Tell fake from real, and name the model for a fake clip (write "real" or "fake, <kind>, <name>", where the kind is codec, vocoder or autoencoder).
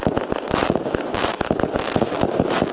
real